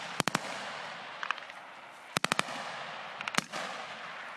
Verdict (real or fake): real